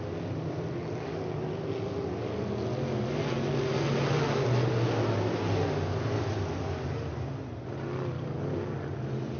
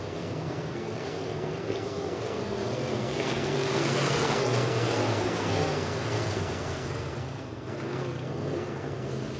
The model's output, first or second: second